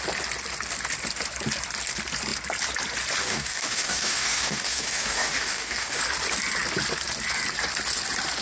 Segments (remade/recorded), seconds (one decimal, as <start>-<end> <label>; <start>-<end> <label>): 0.0-3.2 recorded; 3.2-6.0 remade; 6.0-8.4 recorded